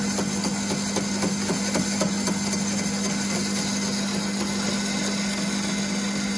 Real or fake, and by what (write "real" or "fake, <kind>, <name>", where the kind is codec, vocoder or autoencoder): real